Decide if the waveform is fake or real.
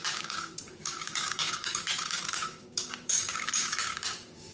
fake